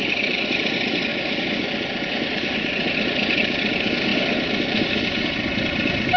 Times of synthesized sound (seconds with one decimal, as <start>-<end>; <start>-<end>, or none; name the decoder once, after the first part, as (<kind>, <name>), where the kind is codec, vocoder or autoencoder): none